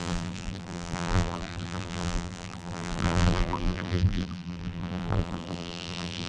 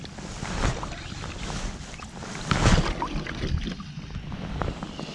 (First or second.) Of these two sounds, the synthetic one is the first